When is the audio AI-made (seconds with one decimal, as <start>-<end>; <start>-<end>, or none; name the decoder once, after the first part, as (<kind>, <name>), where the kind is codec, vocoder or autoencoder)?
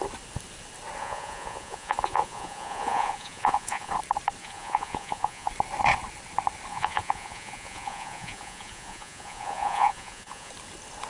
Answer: 1.0-3.9 (vocoder, Vocos); 4.4-5.5; 6.7-10.5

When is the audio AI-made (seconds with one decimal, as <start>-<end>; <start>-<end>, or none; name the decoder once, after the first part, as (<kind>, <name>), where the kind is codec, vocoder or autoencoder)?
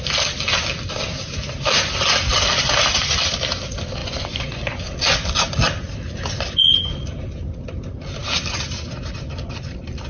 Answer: 4.0-4.8 (vocoder, Vocos)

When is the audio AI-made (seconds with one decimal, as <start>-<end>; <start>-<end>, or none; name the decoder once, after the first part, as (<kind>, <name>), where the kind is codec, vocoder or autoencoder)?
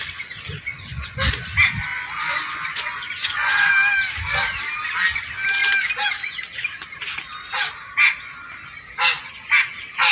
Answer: 0.7-1.3 (vocoder, Vocos); 1.9-3.7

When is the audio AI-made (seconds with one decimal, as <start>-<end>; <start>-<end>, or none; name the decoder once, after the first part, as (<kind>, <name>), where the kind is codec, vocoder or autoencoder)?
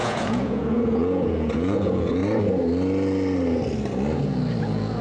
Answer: 0.0-2.2 (vocoder, Vocos); 4.6-5.0